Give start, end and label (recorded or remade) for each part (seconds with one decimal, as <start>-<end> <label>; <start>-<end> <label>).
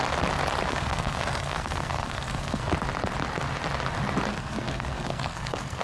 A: 0.0-0.7 recorded; 0.7-2.7 remade; 2.7-4.3 recorded; 4.3-5.8 remade